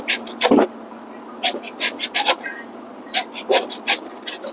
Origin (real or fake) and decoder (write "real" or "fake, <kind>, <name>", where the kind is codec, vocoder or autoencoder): real